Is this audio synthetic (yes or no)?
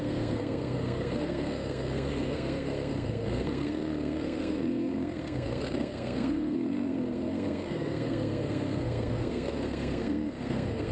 yes